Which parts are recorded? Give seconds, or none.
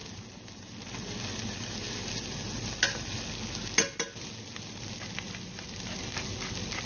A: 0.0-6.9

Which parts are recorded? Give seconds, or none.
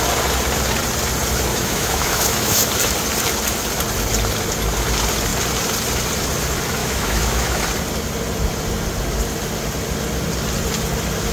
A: 0.0-1.5; 2.7-6.8; 7.6-11.3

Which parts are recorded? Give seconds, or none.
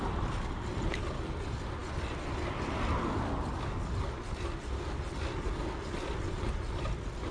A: 0.0-7.3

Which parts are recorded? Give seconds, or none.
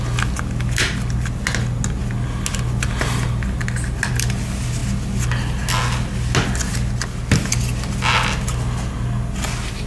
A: 0.0-9.9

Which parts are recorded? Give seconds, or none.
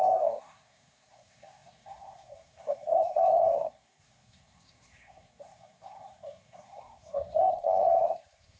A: none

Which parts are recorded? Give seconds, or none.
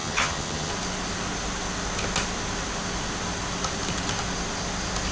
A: 0.7-5.1